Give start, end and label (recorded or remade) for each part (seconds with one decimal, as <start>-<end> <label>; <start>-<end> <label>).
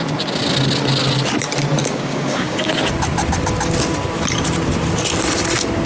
0.0-1.8 recorded; 1.8-2.7 remade; 2.7-5.9 recorded